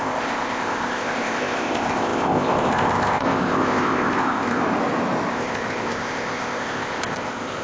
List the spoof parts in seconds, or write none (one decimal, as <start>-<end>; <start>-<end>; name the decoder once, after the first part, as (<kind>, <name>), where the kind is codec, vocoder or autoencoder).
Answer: 0.0-4.6 (codec, ZipCodec); 5.3-7.6